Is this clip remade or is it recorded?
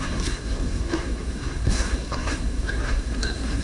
remade